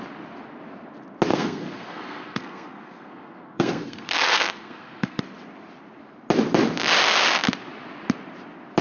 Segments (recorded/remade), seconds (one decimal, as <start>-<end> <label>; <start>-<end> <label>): 0.0-1.3 recorded; 1.3-5.2 remade; 5.2-8.8 recorded